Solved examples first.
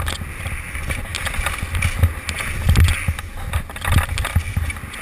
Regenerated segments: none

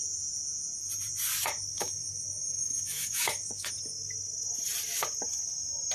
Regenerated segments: 1.7-3.7 (autoencoder, DAC-VAE)

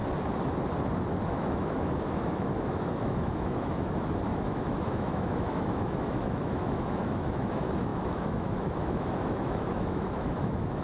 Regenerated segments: 1.2-10.8 (autoencoder, DAC-VAE)

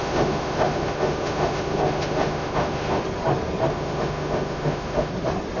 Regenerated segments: 0.0-3.0 (autoencoder, DAC-VAE); 3.7-5.1